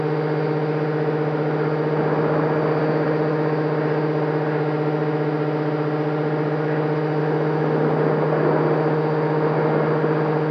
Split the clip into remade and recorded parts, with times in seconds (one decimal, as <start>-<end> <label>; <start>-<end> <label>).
0.0-10.5 recorded